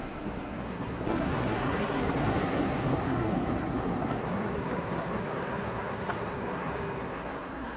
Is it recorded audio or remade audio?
remade